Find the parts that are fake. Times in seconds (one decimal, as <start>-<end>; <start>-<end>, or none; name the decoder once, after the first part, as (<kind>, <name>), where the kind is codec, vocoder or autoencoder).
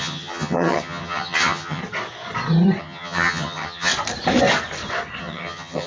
0.0-1.8 (vocoder, HiFi-GAN); 2.8-3.9; 5.2-5.9